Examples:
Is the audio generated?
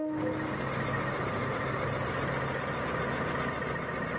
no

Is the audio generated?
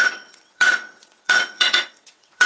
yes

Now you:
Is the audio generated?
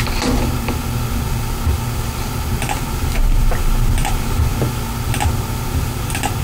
no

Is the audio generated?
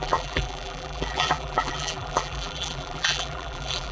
yes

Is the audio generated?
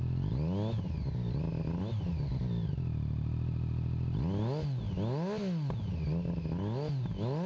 no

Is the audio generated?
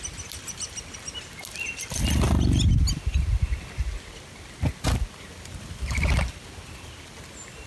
no